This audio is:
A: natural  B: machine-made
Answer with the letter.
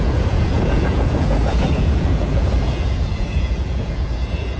B